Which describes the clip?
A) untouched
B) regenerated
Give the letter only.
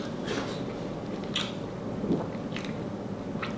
A